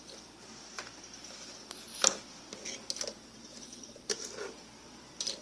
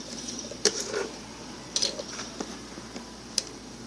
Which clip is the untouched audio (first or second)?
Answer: first